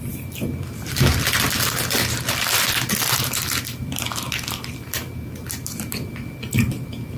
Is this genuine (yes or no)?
no